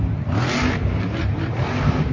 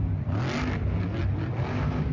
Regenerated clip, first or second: first